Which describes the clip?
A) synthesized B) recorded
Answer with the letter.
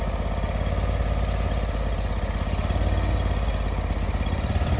B